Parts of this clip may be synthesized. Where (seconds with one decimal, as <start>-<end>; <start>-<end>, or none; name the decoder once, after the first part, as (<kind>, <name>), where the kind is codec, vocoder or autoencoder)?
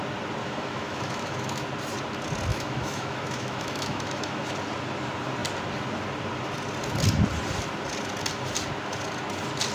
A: 0.4-1.7 (autoencoder, DAC-VAE); 2.5-4.5